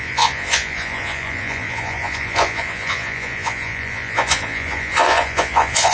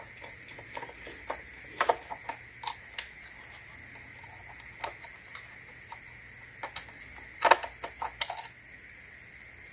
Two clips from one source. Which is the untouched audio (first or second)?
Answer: second